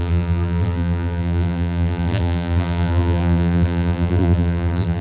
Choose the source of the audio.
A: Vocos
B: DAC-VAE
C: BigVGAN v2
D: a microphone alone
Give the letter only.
C